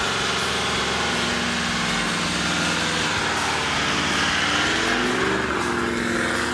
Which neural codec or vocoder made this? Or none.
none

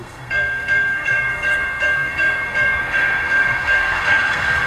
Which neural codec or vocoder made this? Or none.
codec, SNAC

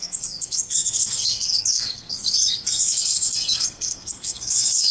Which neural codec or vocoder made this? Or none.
codec, SNAC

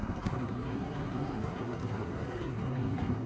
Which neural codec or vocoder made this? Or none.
codec, SNAC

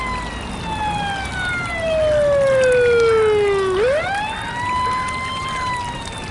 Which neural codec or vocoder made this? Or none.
none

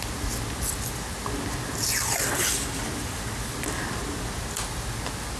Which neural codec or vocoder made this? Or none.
none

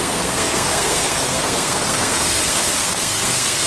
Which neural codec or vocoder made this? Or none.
codec, SNAC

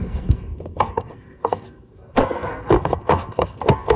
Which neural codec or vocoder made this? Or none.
codec, SNAC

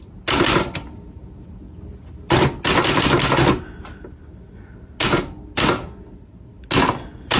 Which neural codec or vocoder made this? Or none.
none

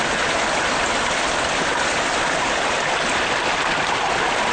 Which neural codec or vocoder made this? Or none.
none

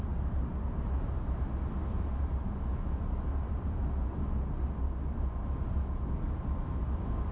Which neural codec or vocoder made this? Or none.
none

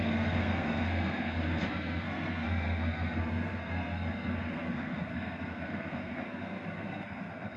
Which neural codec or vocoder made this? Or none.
codec, SNAC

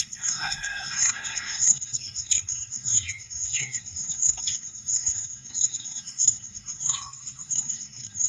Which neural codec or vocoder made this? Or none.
codec, SNAC